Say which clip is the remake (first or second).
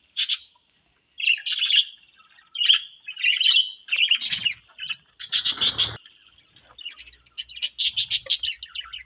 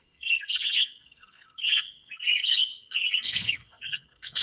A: second